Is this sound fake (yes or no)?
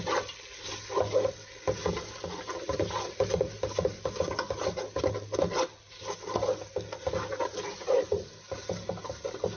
no